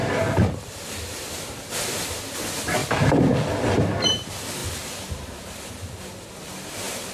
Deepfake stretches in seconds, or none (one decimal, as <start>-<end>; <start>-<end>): 0.0-2.2; 2.8-3.8